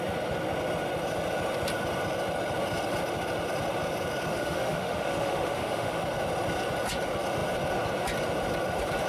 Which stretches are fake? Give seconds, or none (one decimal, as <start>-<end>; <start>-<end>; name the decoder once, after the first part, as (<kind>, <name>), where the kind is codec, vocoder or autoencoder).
4.3-6.0 (autoencoder, DAC-VAE)